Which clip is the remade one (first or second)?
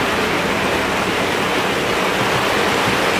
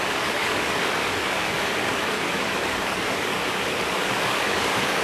second